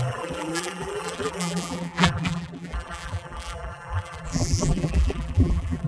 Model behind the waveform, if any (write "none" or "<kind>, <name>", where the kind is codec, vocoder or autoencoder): vocoder, BigVGAN v2